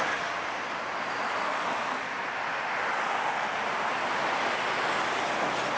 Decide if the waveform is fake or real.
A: real